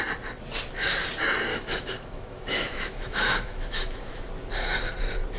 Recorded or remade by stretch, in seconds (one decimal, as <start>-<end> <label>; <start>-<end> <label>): 0.0-1.5 recorded; 1.5-4.2 remade; 4.2-5.4 recorded